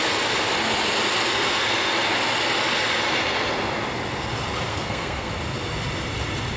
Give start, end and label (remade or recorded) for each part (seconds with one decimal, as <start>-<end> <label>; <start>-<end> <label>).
0.0-4.7 recorded; 4.7-5.3 remade; 5.3-6.6 recorded